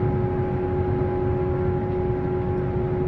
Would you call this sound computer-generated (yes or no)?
no